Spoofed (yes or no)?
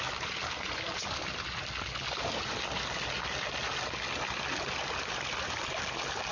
no